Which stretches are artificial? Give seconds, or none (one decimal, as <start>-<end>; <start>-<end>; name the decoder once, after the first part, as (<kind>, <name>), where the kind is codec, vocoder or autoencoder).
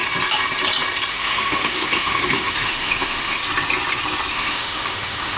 1.1-3.4 (autoencoder, DAC-VAE); 4.3-5.4